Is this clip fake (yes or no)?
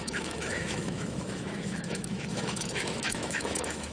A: yes